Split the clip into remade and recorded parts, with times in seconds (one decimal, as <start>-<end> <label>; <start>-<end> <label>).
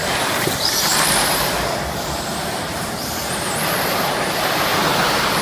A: 0.0-3.2 remade; 3.2-4.7 recorded; 4.7-5.4 remade